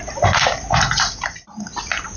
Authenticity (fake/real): fake